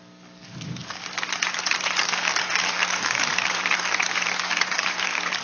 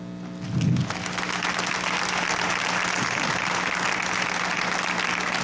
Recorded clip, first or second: second